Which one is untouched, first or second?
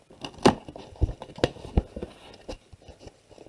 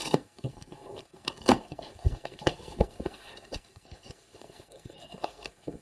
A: first